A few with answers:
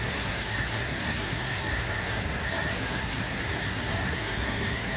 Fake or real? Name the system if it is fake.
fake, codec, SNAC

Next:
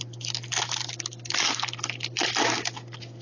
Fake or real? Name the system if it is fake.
real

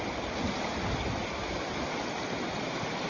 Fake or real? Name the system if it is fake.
real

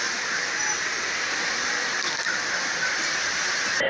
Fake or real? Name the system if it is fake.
real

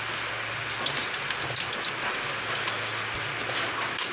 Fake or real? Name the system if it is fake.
real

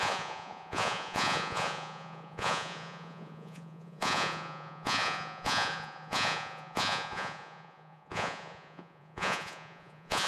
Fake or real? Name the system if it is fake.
fake, vocoder, Vocos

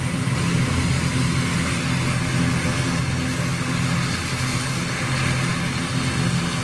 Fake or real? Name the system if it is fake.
real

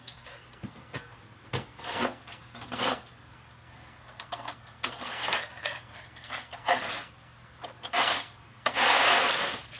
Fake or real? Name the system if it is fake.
fake, codec, SNAC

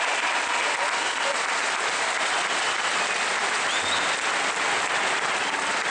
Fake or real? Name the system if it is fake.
real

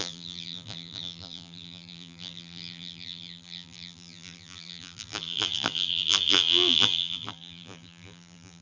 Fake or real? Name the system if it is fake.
fake, vocoder, BigVGAN v2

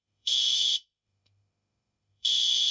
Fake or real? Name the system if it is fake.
fake, autoencoder, DAC-VAE